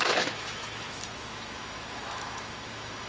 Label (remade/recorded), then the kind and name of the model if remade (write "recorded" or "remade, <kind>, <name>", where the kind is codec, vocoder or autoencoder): remade, autoencoder, DAC-VAE